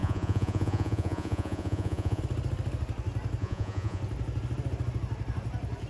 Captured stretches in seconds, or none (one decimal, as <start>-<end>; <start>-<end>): 2.2-3.4; 4.0-5.9